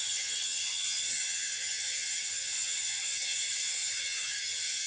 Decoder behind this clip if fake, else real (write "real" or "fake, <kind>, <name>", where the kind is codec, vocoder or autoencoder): fake, vocoder, HiFi-GAN